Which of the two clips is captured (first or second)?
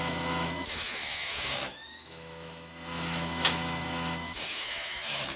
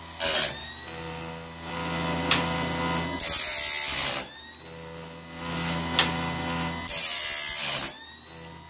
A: second